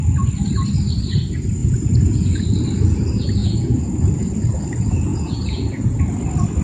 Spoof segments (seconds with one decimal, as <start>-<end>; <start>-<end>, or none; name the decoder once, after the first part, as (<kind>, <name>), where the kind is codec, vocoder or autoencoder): 1.6-2.4 (vocoder, Vocos); 3.4-4.0; 5.1-6.0